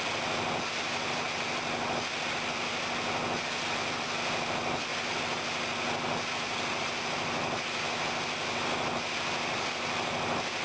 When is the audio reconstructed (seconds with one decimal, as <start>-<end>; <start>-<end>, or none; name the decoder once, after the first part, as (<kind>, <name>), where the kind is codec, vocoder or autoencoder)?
none